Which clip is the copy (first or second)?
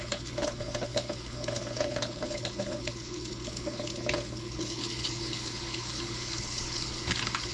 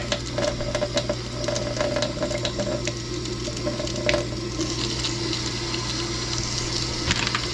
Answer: first